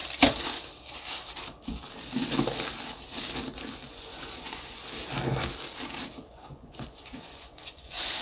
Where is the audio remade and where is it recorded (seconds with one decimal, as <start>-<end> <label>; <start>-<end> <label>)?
0.0-3.9 recorded; 3.9-4.8 remade; 4.8-6.3 recorded; 6.3-8.2 remade